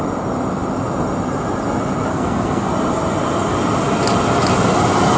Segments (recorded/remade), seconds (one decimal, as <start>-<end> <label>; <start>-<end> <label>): 0.0-2.1 recorded; 2.1-2.7 remade; 2.7-5.2 recorded